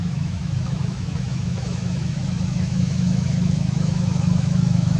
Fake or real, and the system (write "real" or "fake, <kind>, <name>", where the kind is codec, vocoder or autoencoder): fake, autoencoder, DAC-VAE